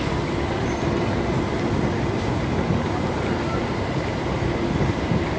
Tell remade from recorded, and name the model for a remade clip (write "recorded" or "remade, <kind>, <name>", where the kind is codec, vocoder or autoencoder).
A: recorded